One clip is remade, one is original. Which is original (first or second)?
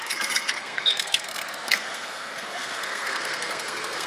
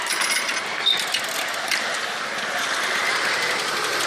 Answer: second